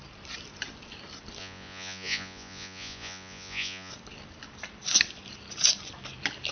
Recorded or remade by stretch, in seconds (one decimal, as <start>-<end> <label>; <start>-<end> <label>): 0.0-1.4 recorded; 1.4-3.9 remade; 3.9-6.5 recorded